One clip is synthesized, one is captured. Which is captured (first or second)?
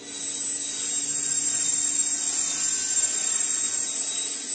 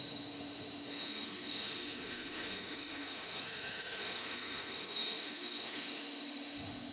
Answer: first